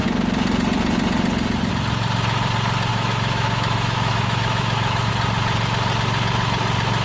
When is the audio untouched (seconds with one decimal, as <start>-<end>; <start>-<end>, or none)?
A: 0.0-2.9; 5.1-7.0